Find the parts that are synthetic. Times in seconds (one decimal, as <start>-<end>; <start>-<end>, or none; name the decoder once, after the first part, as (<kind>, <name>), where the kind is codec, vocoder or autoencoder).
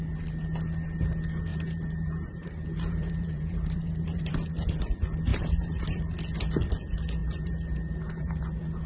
1.5-4.3 (vocoder, BigVGAN v2); 5.3-6.0; 7.2-8.5